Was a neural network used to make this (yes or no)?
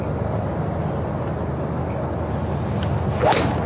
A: no